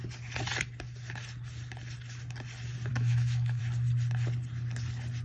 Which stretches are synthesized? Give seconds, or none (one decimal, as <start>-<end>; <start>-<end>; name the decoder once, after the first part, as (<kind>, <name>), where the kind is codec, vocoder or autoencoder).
2.9-3.6 (autoencoder, DAC-VAE)